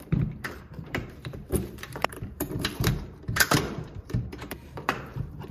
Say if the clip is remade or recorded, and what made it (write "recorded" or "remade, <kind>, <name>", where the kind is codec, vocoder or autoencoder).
remade, vocoder, BigVGAN v2